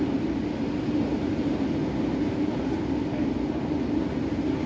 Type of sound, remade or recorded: recorded